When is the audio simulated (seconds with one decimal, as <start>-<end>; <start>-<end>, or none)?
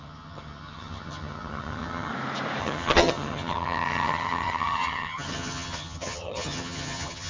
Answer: 0.0-2.1; 2.6-7.3